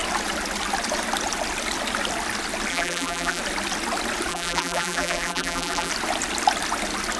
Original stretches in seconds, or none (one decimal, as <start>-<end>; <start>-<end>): 0.0-2.7; 3.4-4.3; 5.9-7.2